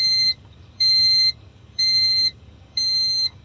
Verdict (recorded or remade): remade